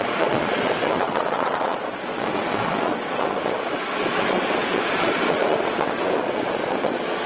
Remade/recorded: remade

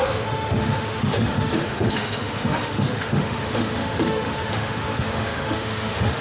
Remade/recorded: remade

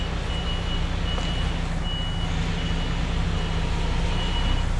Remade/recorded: recorded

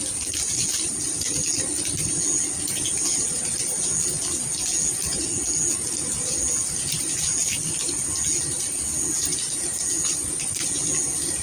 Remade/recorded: recorded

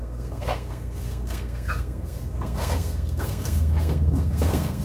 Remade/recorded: remade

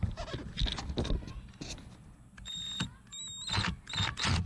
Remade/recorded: recorded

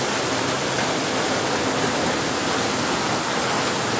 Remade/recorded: recorded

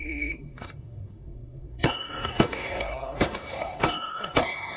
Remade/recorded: remade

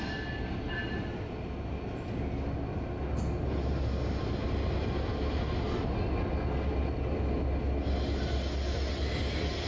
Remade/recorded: recorded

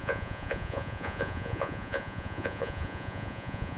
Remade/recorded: remade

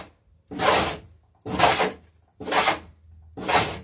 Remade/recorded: recorded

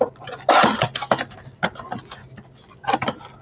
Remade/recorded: recorded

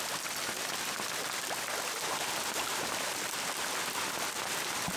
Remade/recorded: recorded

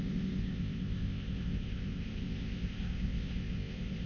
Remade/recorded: remade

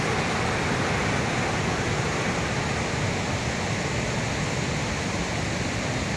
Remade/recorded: recorded